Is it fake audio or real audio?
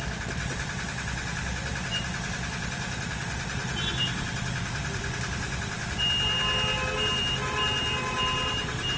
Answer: real